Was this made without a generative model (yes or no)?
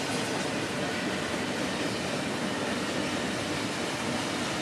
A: yes